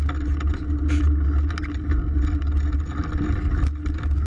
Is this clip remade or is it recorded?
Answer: recorded